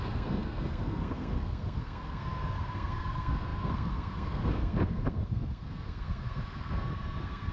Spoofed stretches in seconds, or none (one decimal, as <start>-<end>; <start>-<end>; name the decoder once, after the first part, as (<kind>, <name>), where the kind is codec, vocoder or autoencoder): 0.0-7.5 (codec, SNAC)